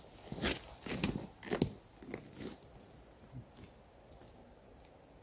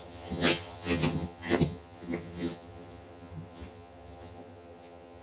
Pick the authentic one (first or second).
first